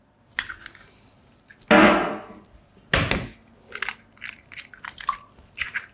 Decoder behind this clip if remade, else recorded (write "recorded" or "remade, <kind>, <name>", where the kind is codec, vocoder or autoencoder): recorded